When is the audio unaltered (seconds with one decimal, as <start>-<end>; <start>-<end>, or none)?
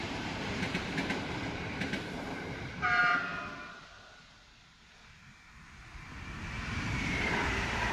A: 3.0-6.7